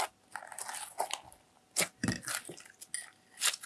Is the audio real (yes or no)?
yes